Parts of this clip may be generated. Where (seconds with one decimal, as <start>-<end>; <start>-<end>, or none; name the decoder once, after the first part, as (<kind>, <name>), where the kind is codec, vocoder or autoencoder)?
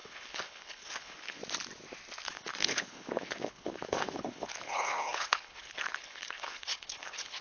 0.0-1.4 (codec, HILCodec); 2.3-7.4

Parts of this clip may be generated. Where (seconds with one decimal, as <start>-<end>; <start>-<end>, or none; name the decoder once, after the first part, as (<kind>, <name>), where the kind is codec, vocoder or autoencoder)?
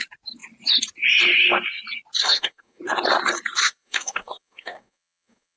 2.2-2.8 (codec, DAC); 3.6-5.6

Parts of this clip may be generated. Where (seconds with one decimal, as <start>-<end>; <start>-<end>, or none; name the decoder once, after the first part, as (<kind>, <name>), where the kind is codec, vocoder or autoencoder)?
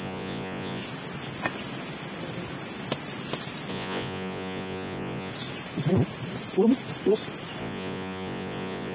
0.0-0.8 (vocoder, Vocos); 3.7-5.3; 7.6-8.9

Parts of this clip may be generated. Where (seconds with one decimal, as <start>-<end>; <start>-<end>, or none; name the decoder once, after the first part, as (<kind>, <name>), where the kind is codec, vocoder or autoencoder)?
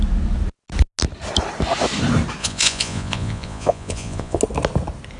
2.4-4.4 (vocoder, Vocos)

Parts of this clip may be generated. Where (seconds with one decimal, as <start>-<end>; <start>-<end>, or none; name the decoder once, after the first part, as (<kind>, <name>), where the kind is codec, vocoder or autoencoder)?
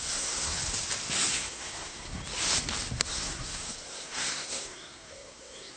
0.0-0.6 (codec, SNAC); 1.3-2.2; 2.9-5.8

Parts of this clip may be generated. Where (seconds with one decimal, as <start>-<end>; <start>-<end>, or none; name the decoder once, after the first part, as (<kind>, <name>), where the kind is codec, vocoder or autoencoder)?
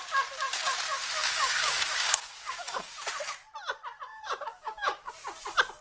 1.2-2.9 (codec, DAC); 4.1-5.1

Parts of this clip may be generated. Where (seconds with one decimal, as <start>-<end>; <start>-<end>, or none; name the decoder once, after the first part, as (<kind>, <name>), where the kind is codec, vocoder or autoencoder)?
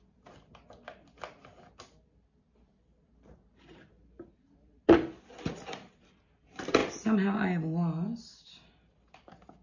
none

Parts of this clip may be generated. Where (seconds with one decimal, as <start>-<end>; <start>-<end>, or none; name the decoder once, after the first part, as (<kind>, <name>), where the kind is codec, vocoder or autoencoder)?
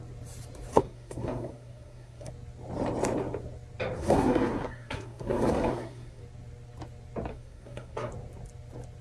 0.7-2.3 (codec, SNAC); 4.0-6.2; 7.3-8.1